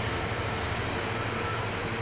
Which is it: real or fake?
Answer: real